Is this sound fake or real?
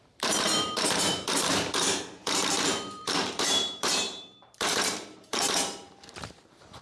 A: fake